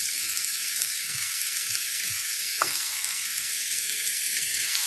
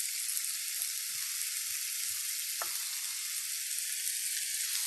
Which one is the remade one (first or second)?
first